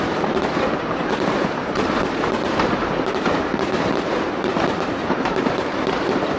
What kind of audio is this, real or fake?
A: fake